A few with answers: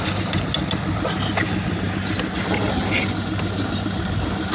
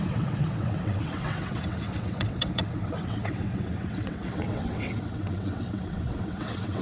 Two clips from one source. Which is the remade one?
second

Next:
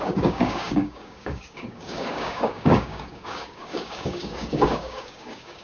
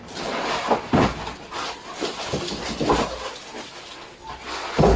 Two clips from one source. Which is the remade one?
first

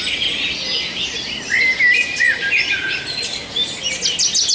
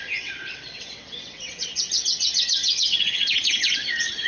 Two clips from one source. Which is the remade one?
second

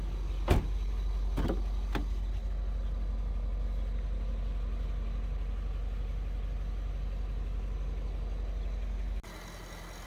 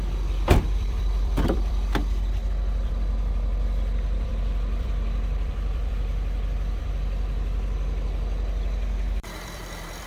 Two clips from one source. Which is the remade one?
second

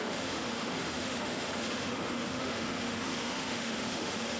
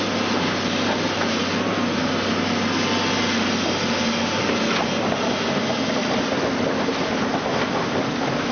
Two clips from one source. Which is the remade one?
first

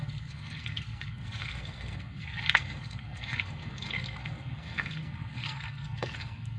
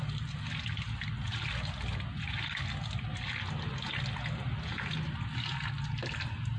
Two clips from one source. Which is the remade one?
first